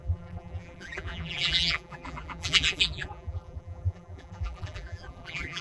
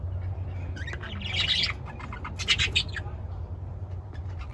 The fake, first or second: first